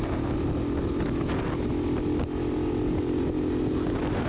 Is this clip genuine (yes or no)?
yes